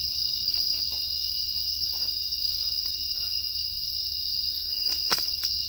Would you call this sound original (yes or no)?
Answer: no